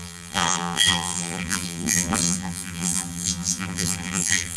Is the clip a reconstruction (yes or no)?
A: yes